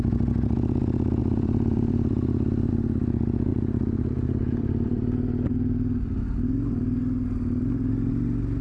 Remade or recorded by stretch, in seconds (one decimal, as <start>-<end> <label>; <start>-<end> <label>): 0.0-1.2 recorded; 1.2-2.7 remade; 2.7-3.5 recorded; 3.5-8.1 remade; 8.1-8.6 recorded

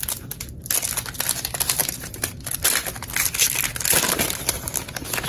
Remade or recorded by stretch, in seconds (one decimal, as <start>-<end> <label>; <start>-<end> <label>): 0.0-1.8 recorded; 1.8-3.1 remade; 3.1-5.3 recorded

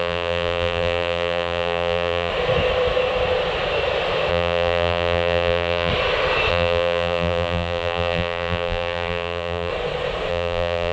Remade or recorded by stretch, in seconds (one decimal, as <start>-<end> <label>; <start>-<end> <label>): 0.0-2.3 remade; 2.3-4.3 recorded; 4.3-5.9 remade; 5.9-6.5 recorded; 6.5-9.7 remade; 9.7-10.3 recorded; 10.3-10.9 remade

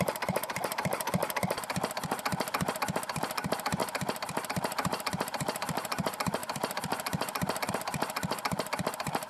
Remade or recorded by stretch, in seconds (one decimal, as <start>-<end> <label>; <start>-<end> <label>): 0.0-1.2 remade; 1.2-3.2 recorded; 3.2-3.8 remade; 3.8-4.5 recorded; 4.5-9.3 remade

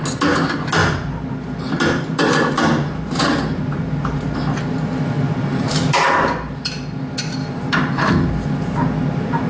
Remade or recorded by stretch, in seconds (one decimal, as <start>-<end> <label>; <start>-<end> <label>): 0.0-5.5 recorded; 5.5-6.1 remade; 6.1-7.4 recorded; 7.4-8.1 remade; 8.1-9.5 recorded

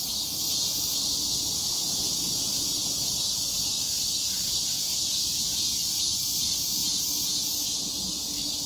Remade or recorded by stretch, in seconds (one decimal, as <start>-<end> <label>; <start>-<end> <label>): 0.0-2.8 remade; 2.8-6.1 recorded; 6.1-6.8 remade; 6.8-8.1 recorded; 8.1-8.7 remade